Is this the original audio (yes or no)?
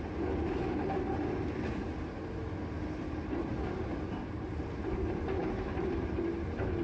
yes